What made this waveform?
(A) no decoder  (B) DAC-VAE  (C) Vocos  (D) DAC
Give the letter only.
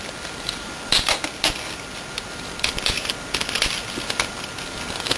A